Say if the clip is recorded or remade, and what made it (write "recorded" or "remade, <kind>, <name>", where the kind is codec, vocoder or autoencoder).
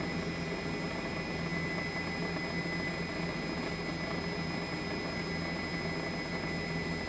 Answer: recorded